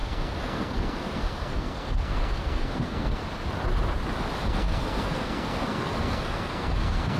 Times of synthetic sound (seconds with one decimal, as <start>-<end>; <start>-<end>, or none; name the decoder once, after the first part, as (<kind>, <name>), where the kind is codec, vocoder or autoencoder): 0.0-3.2 (codec, SNAC); 4.4-7.2